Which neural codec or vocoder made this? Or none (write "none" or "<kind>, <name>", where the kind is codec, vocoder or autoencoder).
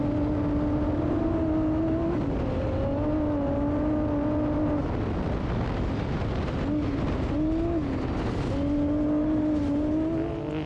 none